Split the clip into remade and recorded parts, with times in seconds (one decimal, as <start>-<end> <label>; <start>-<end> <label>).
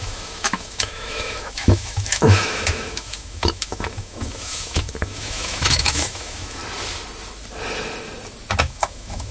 0.0-6.6 remade; 6.6-8.6 recorded; 8.6-9.3 remade